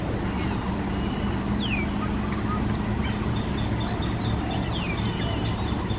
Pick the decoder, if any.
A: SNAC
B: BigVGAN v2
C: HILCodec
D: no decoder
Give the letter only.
D